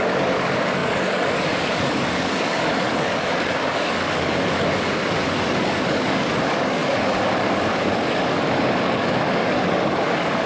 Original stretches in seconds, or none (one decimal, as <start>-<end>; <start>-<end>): none